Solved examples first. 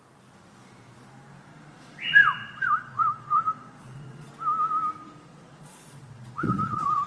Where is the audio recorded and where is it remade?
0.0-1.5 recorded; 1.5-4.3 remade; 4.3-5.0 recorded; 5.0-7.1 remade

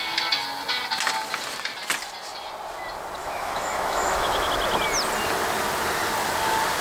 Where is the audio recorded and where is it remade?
0.0-3.2 recorded; 3.2-4.5 remade; 4.5-6.8 recorded

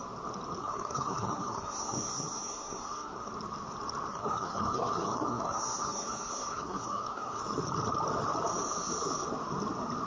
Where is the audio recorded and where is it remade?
0.0-0.6 recorded; 0.6-3.3 remade; 3.3-4.1 recorded; 4.1-7.4 remade; 7.4-10.1 recorded

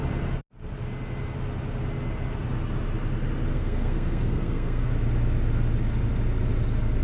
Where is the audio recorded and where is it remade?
0.0-3.5 recorded; 3.5-4.9 remade; 4.9-7.0 recorded